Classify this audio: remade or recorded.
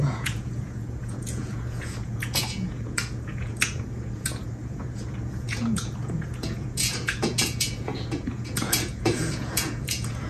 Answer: remade